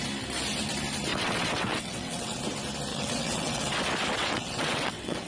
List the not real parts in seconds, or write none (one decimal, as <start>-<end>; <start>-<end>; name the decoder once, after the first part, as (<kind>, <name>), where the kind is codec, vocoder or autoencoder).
1.1-2.4 (vocoder, WaveNeXt); 2.9-3.7; 4.2-5.3